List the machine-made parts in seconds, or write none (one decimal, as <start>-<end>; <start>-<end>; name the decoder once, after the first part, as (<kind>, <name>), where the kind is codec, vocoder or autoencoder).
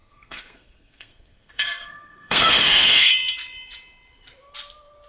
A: 0.0-3.1 (codec, SNAC)